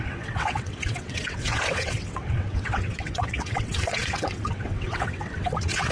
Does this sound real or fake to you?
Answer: fake